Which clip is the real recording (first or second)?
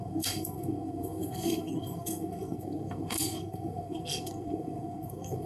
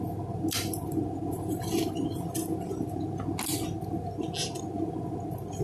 second